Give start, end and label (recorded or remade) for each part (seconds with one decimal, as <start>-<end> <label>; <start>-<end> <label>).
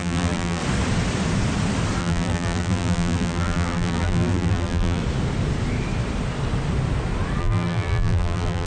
0.0-0.6 remade; 0.6-2.0 recorded; 2.0-5.0 remade; 5.0-7.4 recorded; 7.4-8.7 remade